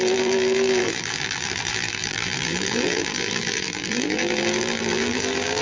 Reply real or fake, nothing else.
fake